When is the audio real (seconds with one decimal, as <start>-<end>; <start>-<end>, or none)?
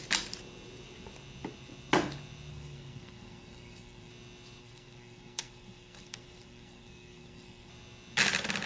0.0-2.5; 4.1-4.6; 7.7-8.7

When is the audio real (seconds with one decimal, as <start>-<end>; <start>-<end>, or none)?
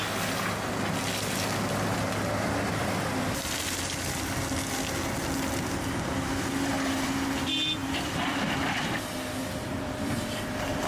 0.0-7.8; 10.1-10.9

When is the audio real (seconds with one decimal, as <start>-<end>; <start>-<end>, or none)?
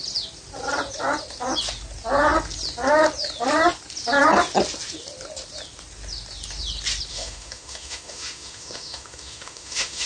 0.0-7.1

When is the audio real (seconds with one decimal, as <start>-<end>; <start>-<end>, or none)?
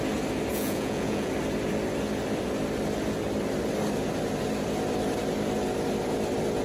0.0-0.5; 1.3-6.6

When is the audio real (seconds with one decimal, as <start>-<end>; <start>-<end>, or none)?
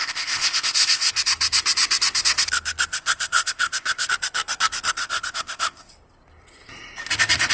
1.1-2.9; 4.1-5.0; 5.9-7.5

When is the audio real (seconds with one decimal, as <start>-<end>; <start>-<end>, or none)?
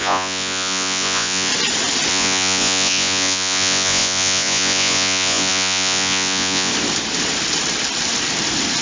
1.5-2.1; 6.7-8.8